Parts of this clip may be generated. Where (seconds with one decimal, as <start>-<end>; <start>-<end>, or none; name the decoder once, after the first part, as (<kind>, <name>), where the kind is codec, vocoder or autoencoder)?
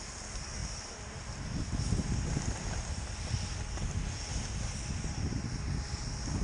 none